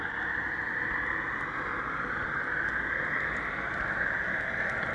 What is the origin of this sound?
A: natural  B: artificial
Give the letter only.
A